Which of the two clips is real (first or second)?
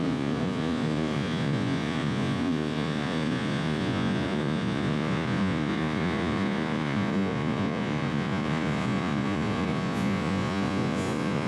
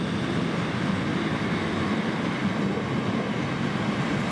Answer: second